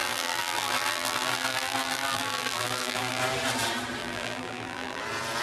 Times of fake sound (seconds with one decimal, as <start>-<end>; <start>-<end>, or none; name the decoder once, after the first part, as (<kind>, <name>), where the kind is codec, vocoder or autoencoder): 0.0-3.2 (vocoder, BigVGAN v2); 4.0-5.0